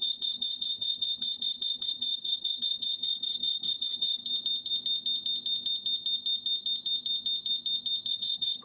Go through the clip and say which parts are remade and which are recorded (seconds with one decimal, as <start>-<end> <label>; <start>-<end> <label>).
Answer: 0.0-4.2 remade; 4.2-8.1 recorded; 8.1-8.6 remade